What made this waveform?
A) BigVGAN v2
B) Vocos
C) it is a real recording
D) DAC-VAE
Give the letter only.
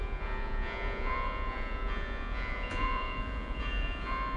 B